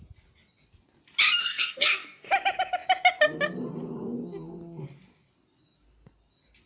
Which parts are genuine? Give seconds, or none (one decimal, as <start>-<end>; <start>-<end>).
0.0-1.4; 2.3-6.7